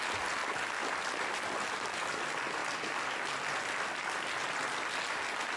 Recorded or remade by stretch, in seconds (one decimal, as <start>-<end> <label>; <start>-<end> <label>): 0.0-5.6 recorded